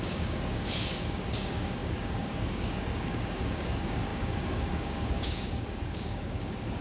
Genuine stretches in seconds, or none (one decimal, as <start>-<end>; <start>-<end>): none